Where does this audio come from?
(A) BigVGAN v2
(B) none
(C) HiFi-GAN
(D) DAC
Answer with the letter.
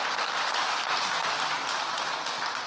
B